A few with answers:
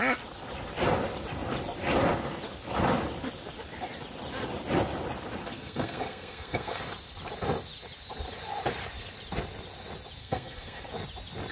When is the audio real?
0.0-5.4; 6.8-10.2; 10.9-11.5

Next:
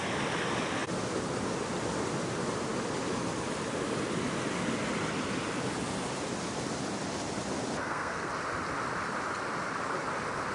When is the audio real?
0.0-7.8; 8.3-10.5